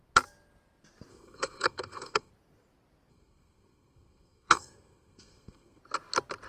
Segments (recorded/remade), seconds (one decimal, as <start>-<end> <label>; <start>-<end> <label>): 0.0-1.1 recorded; 1.1-2.3 remade; 2.3-3.1 recorded; 3.1-5.8 remade; 5.8-6.5 recorded